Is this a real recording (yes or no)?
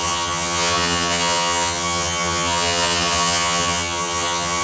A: no